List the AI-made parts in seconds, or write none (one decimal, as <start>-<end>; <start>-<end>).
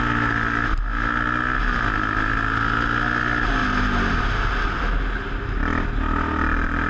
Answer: none